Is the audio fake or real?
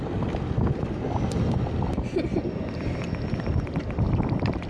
real